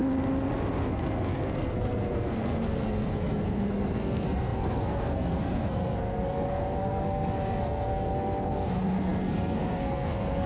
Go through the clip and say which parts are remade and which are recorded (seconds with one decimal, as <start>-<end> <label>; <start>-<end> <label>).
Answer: 0.0-0.8 recorded; 0.8-10.5 remade